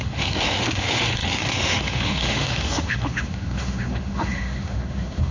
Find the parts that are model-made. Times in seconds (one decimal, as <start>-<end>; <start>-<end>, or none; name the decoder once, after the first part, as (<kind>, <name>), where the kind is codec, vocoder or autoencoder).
0.0-5.3 (autoencoder, DAC-VAE)

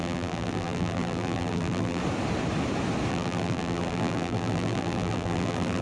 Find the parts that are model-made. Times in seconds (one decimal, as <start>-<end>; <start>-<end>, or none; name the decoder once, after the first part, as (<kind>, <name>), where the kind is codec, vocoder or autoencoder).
0.0-2.0 (vocoder, BigVGAN v2); 3.1-5.8

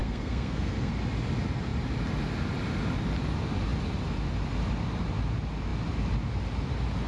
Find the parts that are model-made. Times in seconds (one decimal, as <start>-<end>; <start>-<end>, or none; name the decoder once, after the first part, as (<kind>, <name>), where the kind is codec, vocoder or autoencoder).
0.0-0.9 (codec, SNAC)